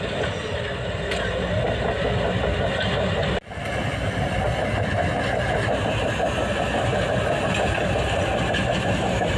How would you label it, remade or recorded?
recorded